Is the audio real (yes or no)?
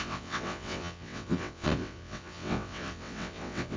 no